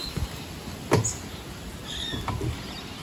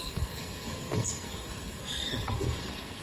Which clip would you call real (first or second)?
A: first